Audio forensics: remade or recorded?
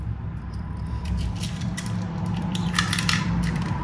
remade